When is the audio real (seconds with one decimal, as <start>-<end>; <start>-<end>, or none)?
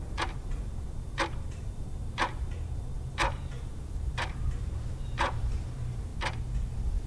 6.1-7.1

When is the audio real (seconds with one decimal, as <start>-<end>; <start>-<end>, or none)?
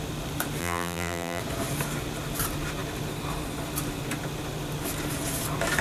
0.0-0.6; 1.4-5.8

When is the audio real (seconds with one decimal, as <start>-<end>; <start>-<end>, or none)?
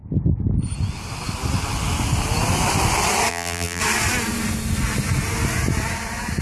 0.0-3.3; 3.8-6.4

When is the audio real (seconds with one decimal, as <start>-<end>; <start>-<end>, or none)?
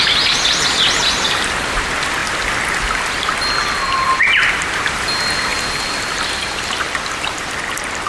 0.0-5.5; 7.6-8.1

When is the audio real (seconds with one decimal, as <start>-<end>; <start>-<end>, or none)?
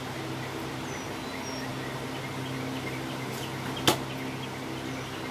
0.0-5.3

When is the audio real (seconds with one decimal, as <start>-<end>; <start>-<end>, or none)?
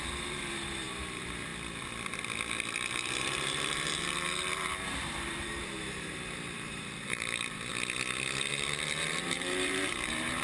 1.5-2.7; 7.7-8.5